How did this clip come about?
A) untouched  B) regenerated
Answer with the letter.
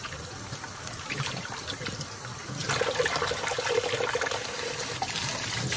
A